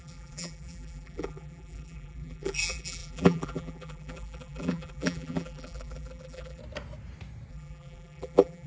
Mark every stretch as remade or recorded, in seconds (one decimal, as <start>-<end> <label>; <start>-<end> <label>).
0.0-6.6 remade; 6.6-7.5 recorded; 7.5-8.7 remade